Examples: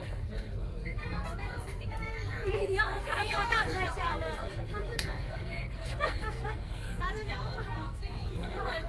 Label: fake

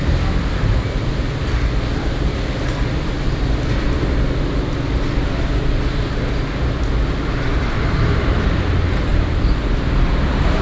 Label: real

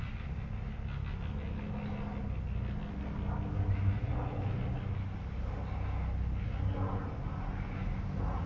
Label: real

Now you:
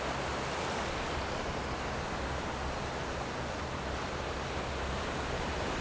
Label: real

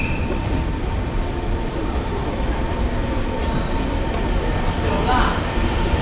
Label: fake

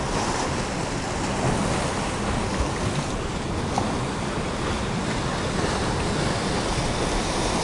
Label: real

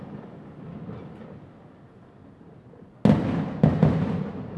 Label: real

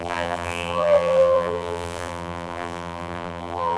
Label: fake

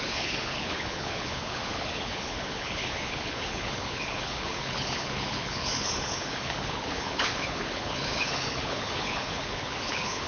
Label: fake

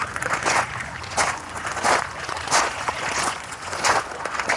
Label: fake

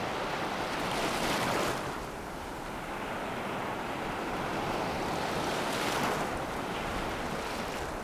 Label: real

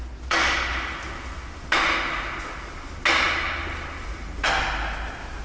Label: real